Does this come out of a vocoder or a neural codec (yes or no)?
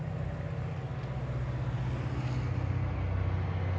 no